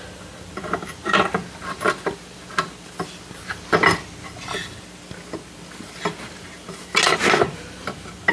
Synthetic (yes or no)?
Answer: no